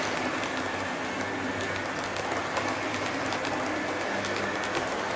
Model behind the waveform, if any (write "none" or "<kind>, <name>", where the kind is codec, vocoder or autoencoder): none